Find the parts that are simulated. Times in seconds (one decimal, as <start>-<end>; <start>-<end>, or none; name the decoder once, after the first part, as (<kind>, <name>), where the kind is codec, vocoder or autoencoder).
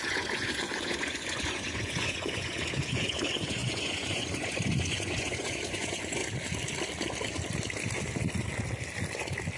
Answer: 0.0-6.2 (vocoder, Vocos)